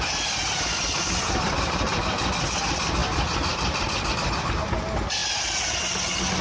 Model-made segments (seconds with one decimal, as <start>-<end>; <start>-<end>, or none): 3.0-4.1